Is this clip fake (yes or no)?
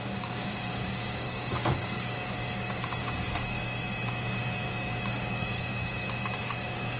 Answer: yes